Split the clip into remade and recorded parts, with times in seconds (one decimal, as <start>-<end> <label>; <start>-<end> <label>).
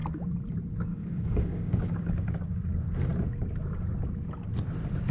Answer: 0.0-0.9 recorded; 0.9-2.4 remade; 2.4-5.1 recorded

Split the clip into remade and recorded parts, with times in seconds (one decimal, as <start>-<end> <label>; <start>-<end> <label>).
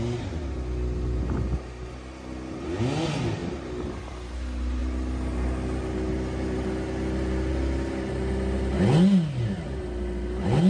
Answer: 0.0-10.7 recorded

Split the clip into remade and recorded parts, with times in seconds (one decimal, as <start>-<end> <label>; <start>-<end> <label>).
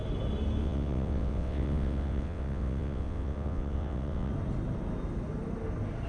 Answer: 0.0-0.6 recorded; 0.6-4.3 remade; 4.3-6.1 recorded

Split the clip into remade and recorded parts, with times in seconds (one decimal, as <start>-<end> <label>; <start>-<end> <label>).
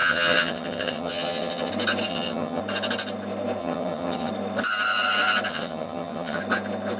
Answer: 0.0-1.7 remade; 1.7-2.1 recorded; 2.1-2.6 remade; 2.6-3.6 recorded; 3.6-4.3 remade; 4.3-5.5 recorded; 5.5-6.4 remade; 6.4-7.0 recorded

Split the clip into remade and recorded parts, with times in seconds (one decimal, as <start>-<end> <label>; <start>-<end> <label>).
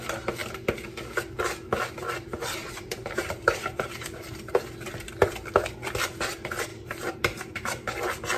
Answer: 0.0-2.6 recorded; 2.6-4.9 remade; 4.9-6.7 recorded; 6.7-8.0 remade; 8.0-8.4 recorded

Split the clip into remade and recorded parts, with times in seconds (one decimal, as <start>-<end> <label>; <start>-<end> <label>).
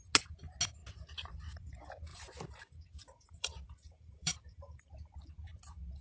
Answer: 0.0-2.1 recorded; 2.1-4.9 remade; 4.9-6.0 recorded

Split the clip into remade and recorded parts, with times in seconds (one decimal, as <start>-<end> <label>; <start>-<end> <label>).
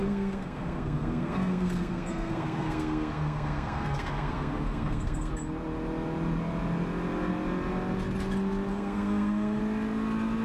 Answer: 0.0-5.3 remade; 5.3-8.7 recorded; 8.7-9.6 remade; 9.6-10.4 recorded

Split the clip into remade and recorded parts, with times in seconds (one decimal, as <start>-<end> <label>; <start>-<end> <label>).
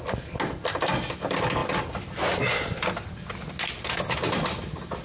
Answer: 0.0-5.0 recorded